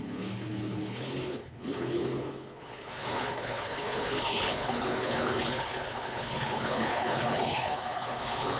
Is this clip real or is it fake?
fake